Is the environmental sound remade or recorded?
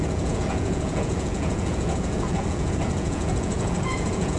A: remade